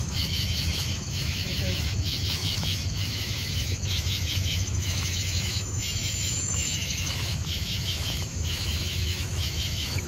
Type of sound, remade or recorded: remade